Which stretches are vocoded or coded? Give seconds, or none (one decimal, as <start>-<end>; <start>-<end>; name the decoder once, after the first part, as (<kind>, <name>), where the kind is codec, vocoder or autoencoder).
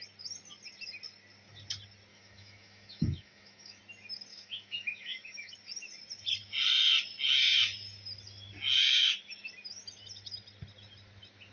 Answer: 2.1-3.8 (autoencoder, DAC-VAE); 4.3-5.5